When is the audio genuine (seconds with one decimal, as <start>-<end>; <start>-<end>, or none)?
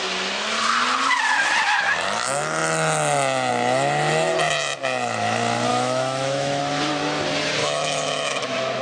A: 0.0-5.7; 6.6-7.6